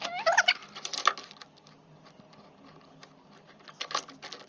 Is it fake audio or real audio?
real